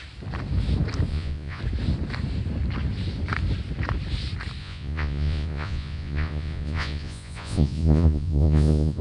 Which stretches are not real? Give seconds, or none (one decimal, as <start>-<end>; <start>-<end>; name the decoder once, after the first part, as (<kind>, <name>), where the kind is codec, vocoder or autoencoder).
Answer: 1.1-1.6 (vocoder, Vocos); 4.6-9.0